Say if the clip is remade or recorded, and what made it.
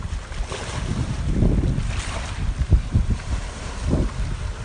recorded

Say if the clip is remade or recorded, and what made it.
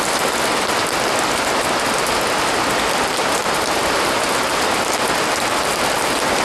recorded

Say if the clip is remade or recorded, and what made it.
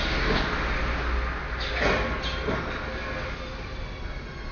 recorded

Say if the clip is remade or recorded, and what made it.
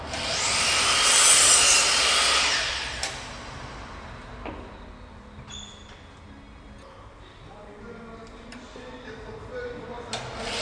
recorded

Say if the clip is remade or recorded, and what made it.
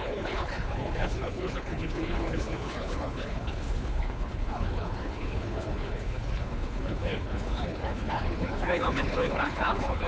remade, codec, HILCodec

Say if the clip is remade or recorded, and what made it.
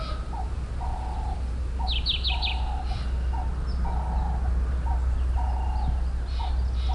recorded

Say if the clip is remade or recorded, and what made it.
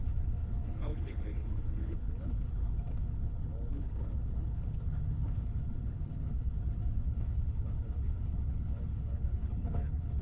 remade, codec, HILCodec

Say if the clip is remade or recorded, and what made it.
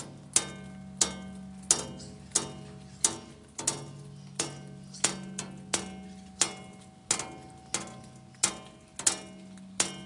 recorded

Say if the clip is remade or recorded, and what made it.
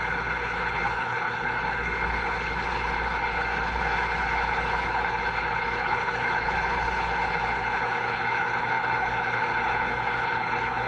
remade, codec, HILCodec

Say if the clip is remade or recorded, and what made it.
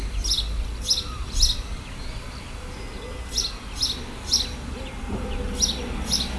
recorded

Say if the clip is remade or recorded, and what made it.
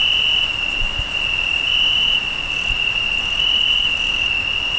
recorded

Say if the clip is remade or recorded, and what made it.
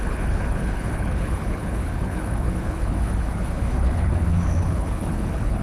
remade, codec, HILCodec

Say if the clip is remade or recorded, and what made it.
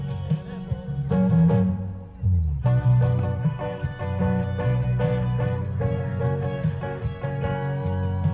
recorded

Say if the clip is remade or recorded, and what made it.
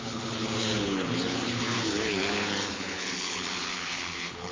remade, codec, HILCodec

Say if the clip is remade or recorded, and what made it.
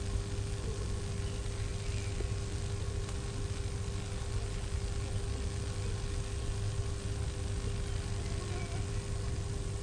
recorded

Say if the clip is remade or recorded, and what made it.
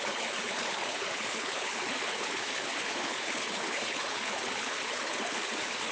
remade, codec, HILCodec